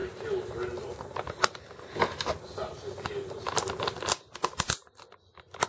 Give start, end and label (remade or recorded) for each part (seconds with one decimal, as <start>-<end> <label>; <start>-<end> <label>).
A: 0.0-5.7 recorded